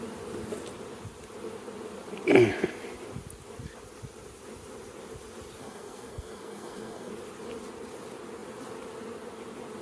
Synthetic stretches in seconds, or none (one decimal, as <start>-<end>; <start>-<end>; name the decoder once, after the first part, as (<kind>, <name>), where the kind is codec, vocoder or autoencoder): 5.6-7.1 (codec, SNAC)